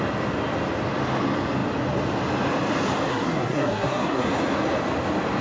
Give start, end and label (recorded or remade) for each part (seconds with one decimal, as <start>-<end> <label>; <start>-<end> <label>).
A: 0.0-3.1 recorded; 3.1-4.3 remade; 4.3-5.4 recorded

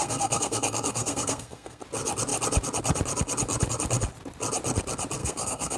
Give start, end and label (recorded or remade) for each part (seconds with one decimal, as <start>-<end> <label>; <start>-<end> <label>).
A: 0.0-1.8 remade; 1.8-5.2 recorded; 5.2-5.8 remade

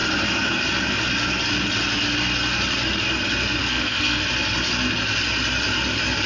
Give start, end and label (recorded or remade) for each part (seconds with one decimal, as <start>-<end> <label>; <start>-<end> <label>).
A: 0.0-3.6 recorded; 3.6-4.2 remade; 4.2-6.3 recorded

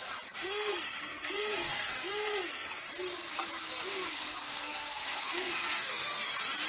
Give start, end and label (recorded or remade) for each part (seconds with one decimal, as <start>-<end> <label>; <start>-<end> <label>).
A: 0.0-0.4 recorded; 0.4-2.8 remade; 2.8-3.6 recorded; 3.6-6.2 remade; 6.2-6.7 recorded

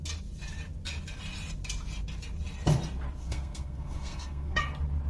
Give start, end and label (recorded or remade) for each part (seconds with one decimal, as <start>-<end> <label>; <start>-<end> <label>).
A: 0.0-3.2 recorded; 3.2-4.6 remade; 4.6-5.1 recorded

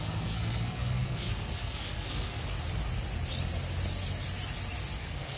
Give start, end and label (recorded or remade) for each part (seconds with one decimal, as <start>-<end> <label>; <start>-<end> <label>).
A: 0.0-2.4 remade; 2.4-5.0 recorded; 5.0-5.4 remade